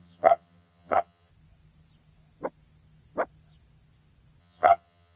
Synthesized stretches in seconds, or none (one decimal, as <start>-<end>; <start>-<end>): 0.0-1.3; 4.4-5.2